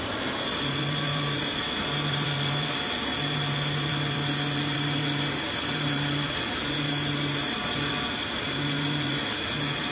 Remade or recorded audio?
remade